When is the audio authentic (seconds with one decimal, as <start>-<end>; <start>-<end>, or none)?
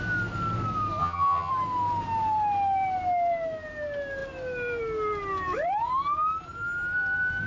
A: 0.0-1.0; 1.5-7.5